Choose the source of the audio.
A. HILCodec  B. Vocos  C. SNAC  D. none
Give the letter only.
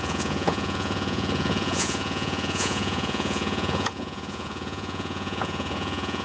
B